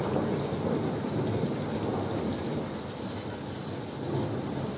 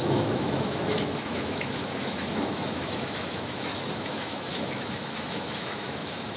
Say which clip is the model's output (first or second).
second